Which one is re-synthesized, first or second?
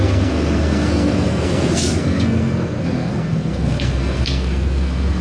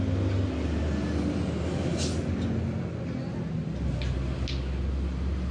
first